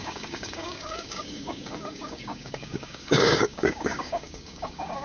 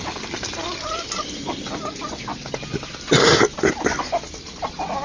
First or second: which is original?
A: second